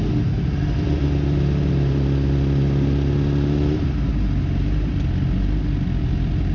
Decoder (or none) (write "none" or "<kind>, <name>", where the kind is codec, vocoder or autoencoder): none